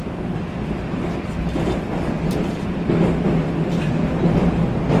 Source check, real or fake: real